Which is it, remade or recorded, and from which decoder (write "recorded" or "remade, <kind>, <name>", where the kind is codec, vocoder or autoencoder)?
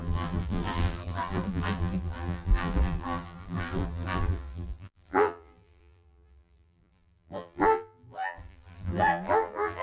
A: remade, vocoder, BigVGAN v2